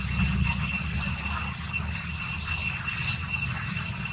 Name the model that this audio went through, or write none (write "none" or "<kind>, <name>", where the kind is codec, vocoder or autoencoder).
none